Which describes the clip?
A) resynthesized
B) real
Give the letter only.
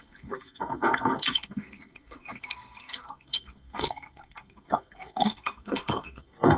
A